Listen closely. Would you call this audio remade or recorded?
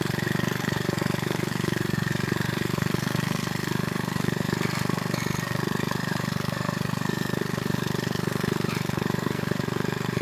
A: remade